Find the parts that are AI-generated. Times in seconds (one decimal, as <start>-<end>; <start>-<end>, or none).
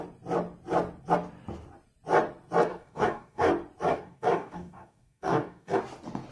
2.7-3.5; 3.9-5.8